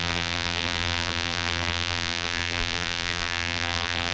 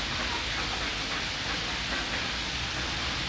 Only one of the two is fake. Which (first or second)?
first